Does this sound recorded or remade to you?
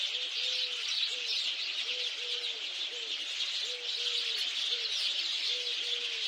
recorded